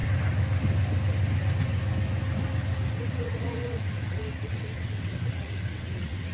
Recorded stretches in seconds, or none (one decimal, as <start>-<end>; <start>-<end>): 0.0-2.9